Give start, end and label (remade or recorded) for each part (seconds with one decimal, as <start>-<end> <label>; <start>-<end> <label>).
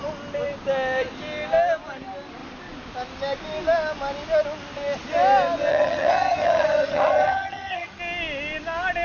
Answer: 0.0-5.7 recorded; 5.7-8.0 remade; 8.0-9.0 recorded